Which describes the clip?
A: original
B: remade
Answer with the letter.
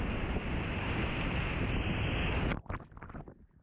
A